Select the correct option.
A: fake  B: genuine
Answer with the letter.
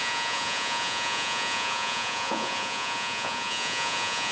A